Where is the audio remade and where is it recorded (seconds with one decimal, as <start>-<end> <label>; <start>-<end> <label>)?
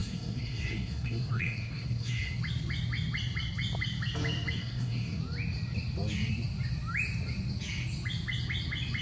0.0-2.4 remade; 2.4-4.6 recorded; 4.6-5.2 remade; 5.2-9.0 recorded